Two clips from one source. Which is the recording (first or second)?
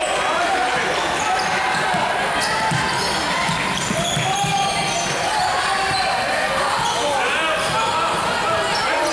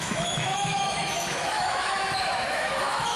first